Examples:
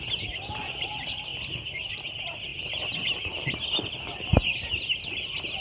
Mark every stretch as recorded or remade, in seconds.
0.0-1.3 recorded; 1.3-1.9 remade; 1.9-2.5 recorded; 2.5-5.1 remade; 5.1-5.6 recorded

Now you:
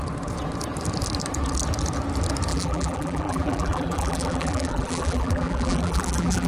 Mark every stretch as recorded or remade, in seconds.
0.0-2.5 recorded; 2.5-6.5 remade

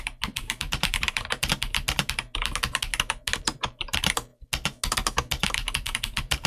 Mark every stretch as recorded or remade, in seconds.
0.0-1.5 remade; 1.5-3.4 recorded; 3.4-4.3 remade; 4.3-5.5 recorded; 5.5-6.5 remade

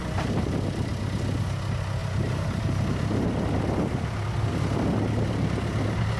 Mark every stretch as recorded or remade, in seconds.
0.0-0.9 remade; 0.9-2.0 recorded; 2.0-4.5 remade; 4.5-6.2 recorded

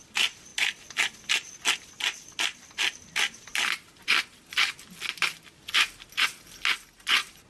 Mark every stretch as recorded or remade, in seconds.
0.0-7.5 recorded